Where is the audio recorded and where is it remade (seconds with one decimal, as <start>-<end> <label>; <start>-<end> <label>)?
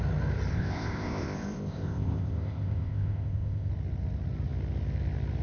0.0-0.5 recorded; 0.5-3.7 remade; 3.7-5.4 recorded